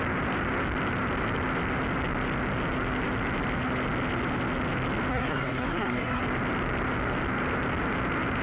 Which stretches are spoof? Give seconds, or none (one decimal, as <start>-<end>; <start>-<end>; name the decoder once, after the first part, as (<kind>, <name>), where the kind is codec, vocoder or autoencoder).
5.1-6.2 (codec, SNAC)